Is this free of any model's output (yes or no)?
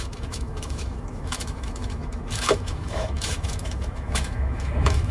no